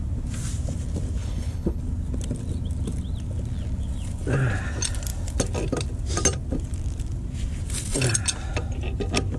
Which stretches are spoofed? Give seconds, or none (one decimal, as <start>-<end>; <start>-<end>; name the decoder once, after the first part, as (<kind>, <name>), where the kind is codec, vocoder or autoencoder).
1.2-1.8 (codec, HILCodec)